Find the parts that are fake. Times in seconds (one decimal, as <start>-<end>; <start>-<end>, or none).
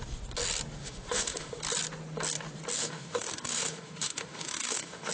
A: 0.8-1.6; 2.8-5.1